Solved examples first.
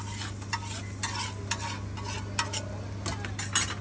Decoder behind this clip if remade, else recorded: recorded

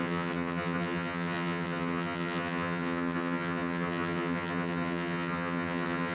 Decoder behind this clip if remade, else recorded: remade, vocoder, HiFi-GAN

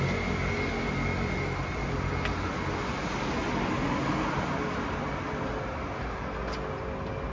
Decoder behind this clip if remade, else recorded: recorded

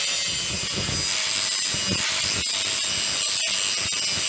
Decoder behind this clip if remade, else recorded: recorded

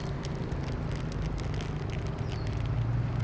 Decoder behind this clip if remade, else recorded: recorded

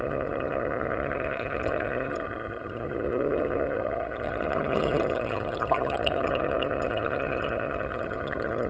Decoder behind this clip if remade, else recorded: remade, vocoder, HiFi-GAN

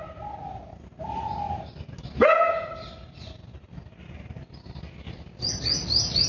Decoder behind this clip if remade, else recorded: recorded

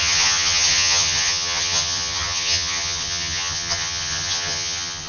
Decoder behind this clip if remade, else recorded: remade, vocoder, HiFi-GAN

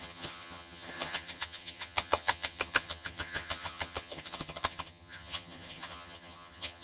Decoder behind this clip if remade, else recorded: remade, vocoder, HiFi-GAN